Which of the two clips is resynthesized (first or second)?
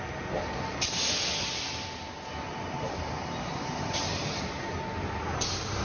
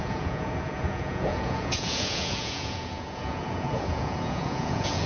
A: second